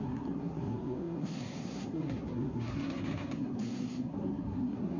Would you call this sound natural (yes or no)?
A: no